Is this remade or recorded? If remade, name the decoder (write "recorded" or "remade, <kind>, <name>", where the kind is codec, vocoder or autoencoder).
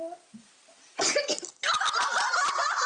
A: recorded